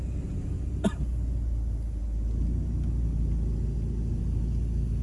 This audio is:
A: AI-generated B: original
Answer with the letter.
B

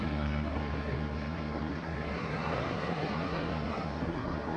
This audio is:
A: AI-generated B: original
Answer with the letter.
A